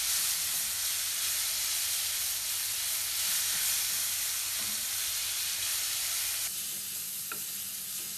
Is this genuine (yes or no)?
yes